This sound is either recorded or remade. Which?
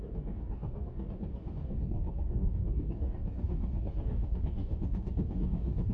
remade